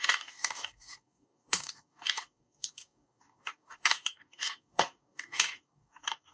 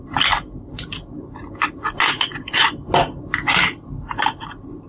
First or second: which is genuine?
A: second